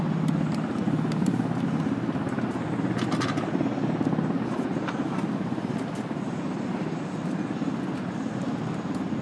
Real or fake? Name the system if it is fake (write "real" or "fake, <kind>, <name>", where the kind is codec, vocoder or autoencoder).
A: real